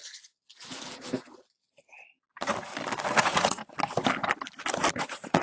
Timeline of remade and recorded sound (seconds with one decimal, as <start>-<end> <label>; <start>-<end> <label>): 0.0-3.2 recorded; 3.2-3.6 remade; 3.6-4.9 recorded; 4.9-5.4 remade